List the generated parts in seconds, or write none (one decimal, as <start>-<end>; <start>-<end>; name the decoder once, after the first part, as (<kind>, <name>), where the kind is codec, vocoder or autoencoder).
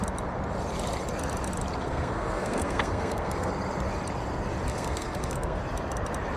1.8-3.5 (codec, SNAC); 4.7-5.6